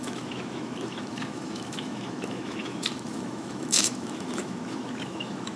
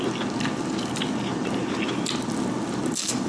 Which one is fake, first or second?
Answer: first